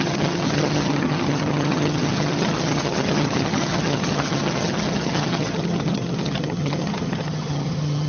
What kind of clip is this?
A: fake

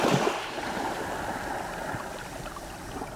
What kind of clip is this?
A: real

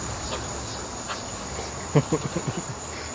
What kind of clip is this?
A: real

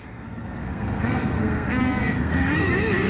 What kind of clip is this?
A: fake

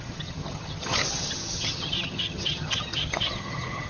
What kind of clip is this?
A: fake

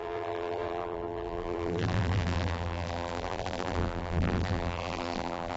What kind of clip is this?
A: fake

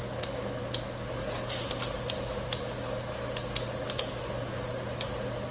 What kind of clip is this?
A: real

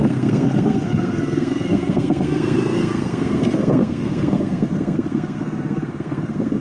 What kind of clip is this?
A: fake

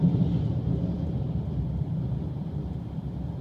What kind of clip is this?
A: fake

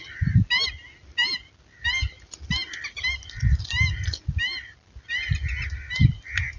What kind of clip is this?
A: real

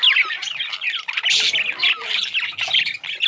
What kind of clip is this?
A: real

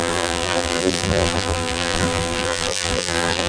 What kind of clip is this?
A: fake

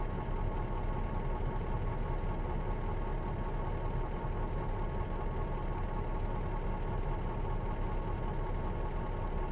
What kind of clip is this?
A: real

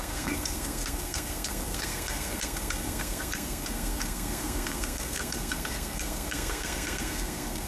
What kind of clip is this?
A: fake